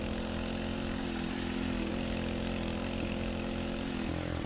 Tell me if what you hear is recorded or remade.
recorded